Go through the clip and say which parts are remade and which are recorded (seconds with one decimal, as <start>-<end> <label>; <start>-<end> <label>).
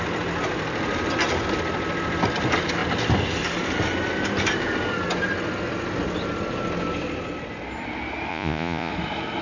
0.0-8.3 recorded; 8.3-8.9 remade; 8.9-9.4 recorded